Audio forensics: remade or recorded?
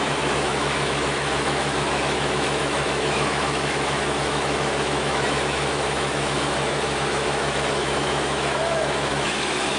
remade